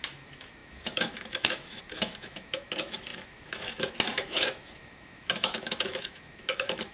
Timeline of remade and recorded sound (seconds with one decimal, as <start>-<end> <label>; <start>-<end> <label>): 0.0-6.9 remade